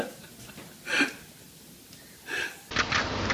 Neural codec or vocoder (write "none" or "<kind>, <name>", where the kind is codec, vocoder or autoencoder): none